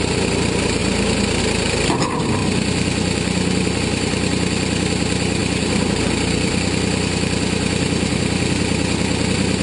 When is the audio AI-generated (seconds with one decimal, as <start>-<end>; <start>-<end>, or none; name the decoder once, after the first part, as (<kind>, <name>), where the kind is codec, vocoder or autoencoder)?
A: 0.0-0.8 (vocoder, BigVGAN v2); 1.4-2.4; 3.8-9.6